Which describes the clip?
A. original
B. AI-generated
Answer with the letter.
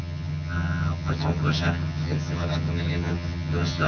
B